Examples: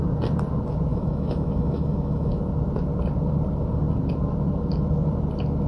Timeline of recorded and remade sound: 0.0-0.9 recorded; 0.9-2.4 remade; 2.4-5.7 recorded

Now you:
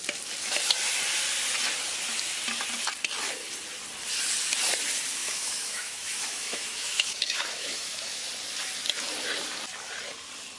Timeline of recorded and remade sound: 0.0-5.2 recorded; 5.2-8.3 remade; 8.3-10.6 recorded